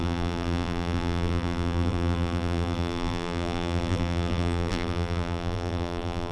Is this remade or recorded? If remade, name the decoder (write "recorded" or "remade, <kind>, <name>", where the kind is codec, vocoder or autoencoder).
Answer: remade, vocoder, BigVGAN v2